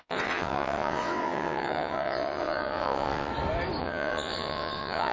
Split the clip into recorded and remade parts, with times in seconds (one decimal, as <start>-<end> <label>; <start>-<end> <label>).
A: 0.0-3.3 remade; 3.3-3.8 recorded; 3.8-5.1 remade